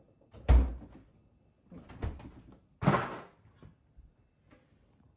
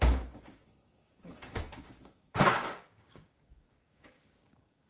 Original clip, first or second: first